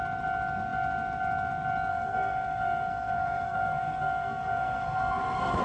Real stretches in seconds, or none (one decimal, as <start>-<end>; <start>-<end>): 0.0-1.9